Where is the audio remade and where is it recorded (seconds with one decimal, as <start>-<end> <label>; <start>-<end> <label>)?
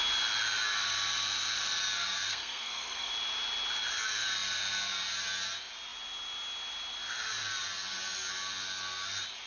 0.0-2.3 recorded; 2.3-3.1 remade; 3.1-9.5 recorded